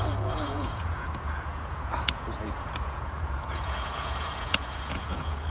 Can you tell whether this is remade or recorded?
remade